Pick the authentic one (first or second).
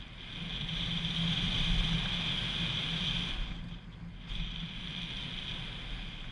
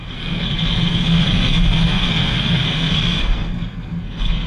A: first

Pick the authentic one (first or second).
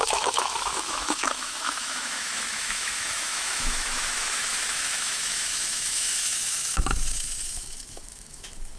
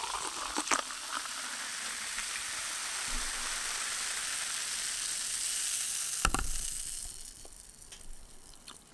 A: second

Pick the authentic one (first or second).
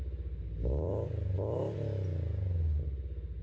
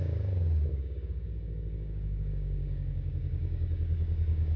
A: first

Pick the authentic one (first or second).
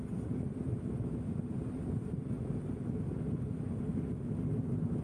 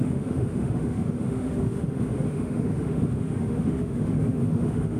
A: first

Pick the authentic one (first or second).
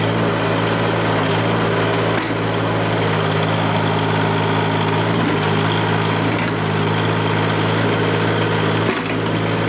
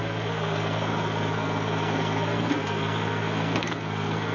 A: first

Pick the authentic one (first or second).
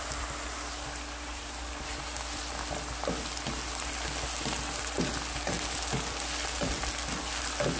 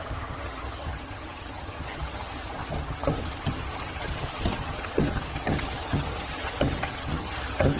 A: first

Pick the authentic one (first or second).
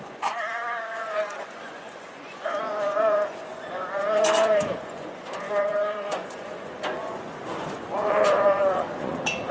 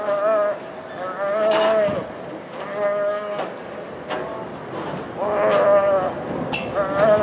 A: second